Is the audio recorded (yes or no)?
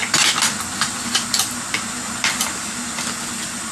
yes